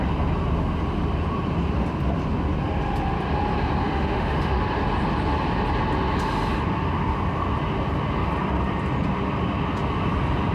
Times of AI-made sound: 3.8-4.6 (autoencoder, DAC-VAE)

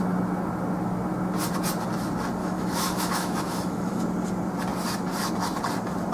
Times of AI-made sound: 2.4-4.0 (autoencoder, DAC-VAE)

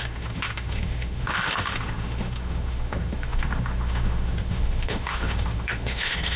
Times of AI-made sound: 0.0-6.4 (autoencoder, DAC-VAE)

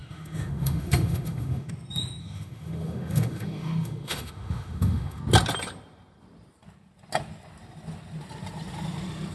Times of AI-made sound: 0.0-1.7 (autoencoder, DAC-VAE); 2.2-5.2

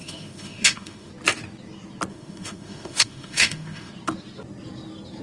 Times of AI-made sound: 0.0-1.1 (autoencoder, DAC-VAE); 2.1-3.9

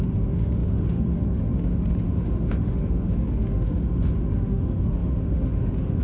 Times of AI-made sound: 0.0-6.0 (autoencoder, DAC-VAE)